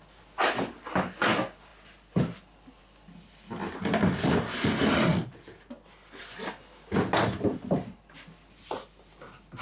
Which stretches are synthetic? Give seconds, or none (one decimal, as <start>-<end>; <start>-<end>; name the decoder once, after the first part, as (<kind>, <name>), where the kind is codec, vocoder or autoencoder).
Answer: 5.1-6.2 (vocoder, BigVGAN v2); 7.5-9.6